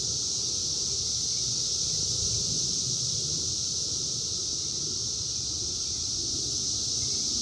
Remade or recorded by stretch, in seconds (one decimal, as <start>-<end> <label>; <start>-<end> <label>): 0.0-2.4 recorded; 2.4-6.6 remade; 6.6-7.4 recorded